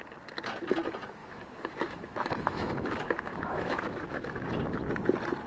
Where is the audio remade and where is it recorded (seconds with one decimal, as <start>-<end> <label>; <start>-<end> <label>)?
0.0-1.2 recorded; 1.2-4.5 remade; 4.5-5.5 recorded